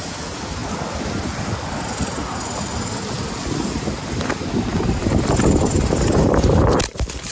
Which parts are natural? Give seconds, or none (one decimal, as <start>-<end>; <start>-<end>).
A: 0.6-5.0